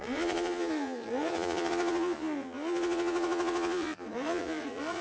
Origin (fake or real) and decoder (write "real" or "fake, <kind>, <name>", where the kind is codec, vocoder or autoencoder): fake, vocoder, Vocos